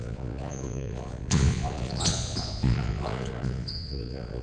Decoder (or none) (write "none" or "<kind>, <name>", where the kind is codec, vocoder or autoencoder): vocoder, Vocos